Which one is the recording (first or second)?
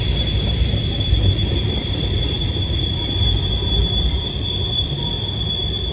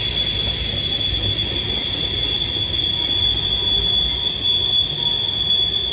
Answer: second